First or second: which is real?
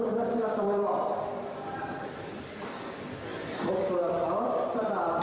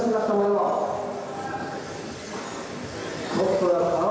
second